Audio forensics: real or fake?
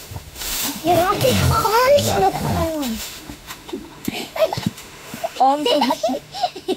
fake